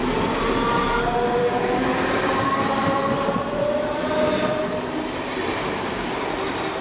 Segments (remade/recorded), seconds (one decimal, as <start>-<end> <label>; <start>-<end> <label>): 0.0-1.4 recorded; 1.4-2.6 remade; 2.6-5.6 recorded; 5.6-6.1 remade; 6.1-6.8 recorded